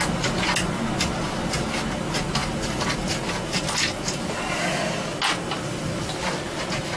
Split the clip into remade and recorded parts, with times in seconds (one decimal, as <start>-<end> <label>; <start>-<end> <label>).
0.0-7.0 recorded